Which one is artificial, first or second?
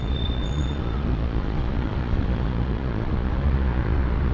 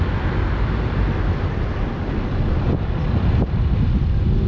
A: first